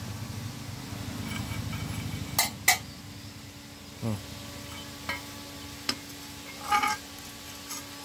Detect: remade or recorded recorded